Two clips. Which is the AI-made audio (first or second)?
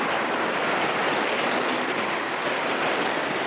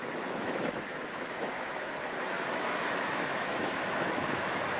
second